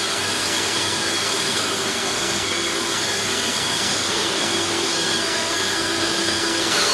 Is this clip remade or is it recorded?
remade